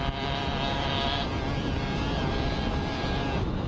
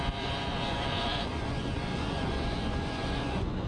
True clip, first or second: first